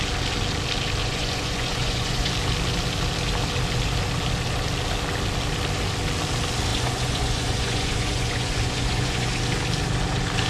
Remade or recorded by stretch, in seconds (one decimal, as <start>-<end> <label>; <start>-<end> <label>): 0.0-1.0 recorded; 1.0-2.3 remade; 2.3-6.7 recorded; 6.7-9.3 remade; 9.3-10.5 recorded